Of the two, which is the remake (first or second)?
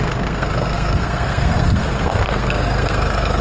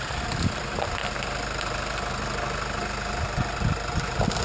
first